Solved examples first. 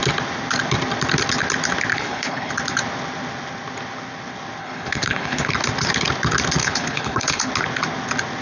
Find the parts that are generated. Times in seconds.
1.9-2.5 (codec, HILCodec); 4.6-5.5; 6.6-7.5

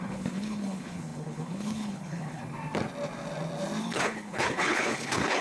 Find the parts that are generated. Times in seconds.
0.0-2.4 (codec, HILCodec); 3.8-5.4

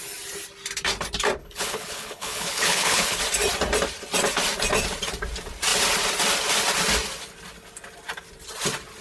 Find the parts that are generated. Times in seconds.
1.4-3.2 (codec, HILCodec)

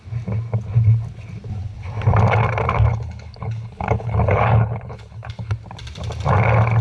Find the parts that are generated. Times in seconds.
2.9-5.5 (codec, HILCodec)

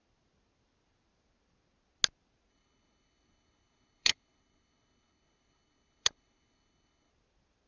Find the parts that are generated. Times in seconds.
2.5-7.1 (codec, HILCodec)

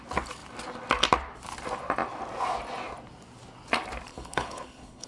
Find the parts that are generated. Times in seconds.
4.1-5.1 (codec, HILCodec)

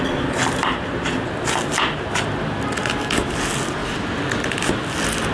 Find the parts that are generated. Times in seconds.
none

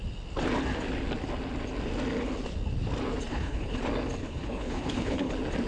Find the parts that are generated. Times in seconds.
3.3-3.8 (codec, HILCodec); 4.2-5.3